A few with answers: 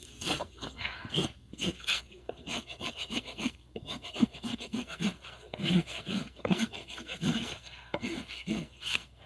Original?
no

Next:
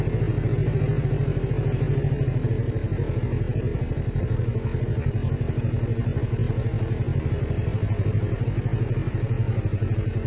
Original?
yes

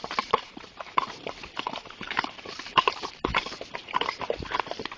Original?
no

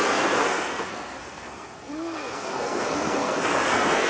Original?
no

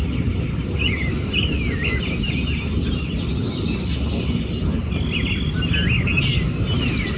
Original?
yes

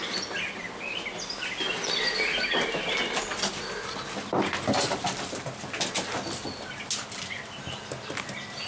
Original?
yes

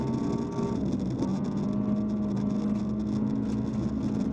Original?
yes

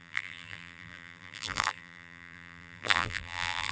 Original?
no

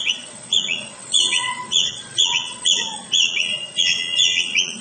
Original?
no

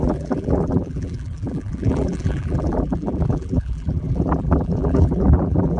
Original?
no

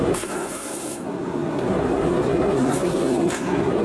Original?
no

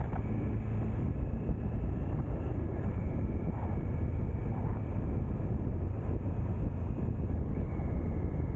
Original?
yes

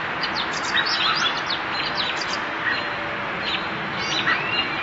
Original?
yes